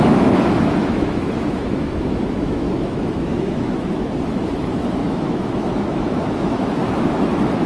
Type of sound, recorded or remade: remade